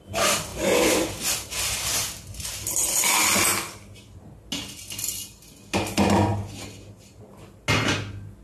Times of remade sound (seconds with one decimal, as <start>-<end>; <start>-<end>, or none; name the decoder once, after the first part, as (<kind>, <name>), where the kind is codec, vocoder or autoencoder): none